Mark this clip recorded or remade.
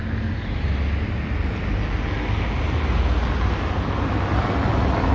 recorded